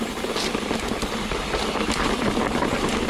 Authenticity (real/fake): real